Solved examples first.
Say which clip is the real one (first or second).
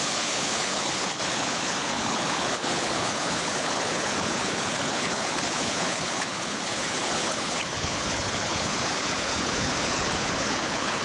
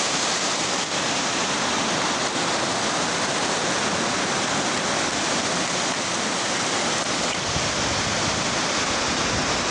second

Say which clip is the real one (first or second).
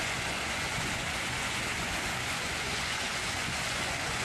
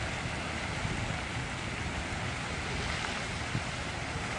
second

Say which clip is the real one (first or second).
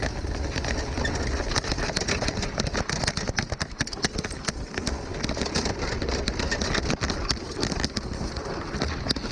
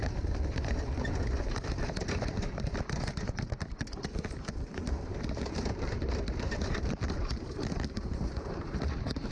first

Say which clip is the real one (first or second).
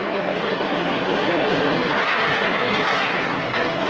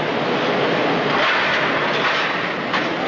second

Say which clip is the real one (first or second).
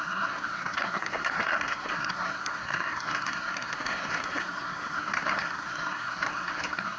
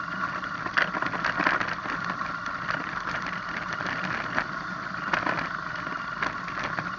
second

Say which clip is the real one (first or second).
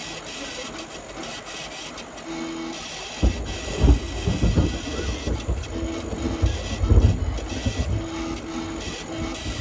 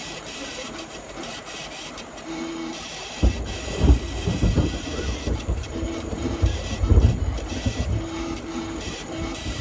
first